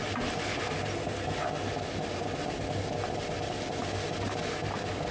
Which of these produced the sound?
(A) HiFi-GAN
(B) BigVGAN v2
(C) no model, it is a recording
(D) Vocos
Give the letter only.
C